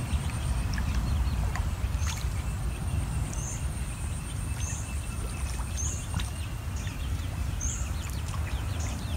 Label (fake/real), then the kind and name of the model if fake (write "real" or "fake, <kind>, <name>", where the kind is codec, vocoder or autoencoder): fake, vocoder, BigVGAN v2